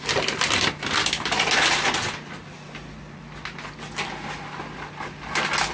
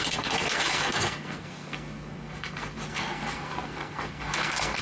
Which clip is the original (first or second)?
first